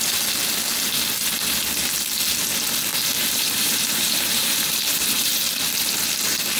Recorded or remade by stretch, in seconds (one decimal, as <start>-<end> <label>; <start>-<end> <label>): 0.0-2.9 recorded; 2.9-5.3 remade; 5.3-6.6 recorded